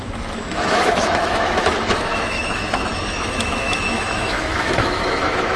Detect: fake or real fake